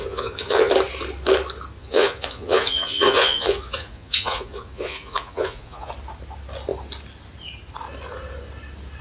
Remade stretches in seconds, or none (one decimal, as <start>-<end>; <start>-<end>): 0.0-0.7; 1.8-5.9